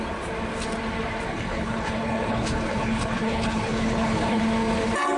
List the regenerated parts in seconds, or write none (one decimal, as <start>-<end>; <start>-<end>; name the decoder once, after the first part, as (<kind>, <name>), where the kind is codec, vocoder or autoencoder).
1.3-4.4 (codec, HILCodec)